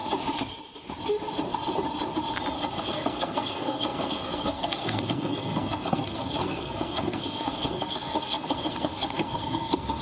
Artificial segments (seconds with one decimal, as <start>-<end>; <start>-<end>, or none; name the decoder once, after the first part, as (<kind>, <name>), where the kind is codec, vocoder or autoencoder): 2.8-10.0 (codec, SNAC)